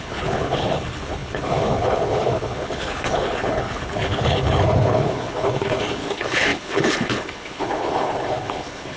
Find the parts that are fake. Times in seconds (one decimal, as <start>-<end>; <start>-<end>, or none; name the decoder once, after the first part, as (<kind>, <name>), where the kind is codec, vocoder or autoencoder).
0.0-9.0 (codec, HILCodec)